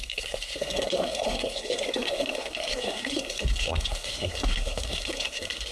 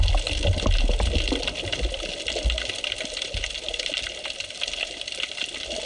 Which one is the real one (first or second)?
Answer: second